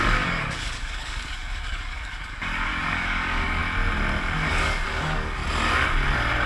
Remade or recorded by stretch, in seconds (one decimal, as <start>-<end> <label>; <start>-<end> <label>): 0.0-3.6 remade; 3.6-4.5 recorded; 4.5-5.4 remade; 5.4-6.5 recorded